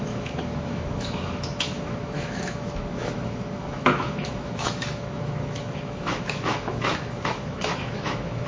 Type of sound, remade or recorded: remade